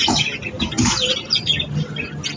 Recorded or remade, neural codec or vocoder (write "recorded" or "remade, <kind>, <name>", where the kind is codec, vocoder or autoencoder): recorded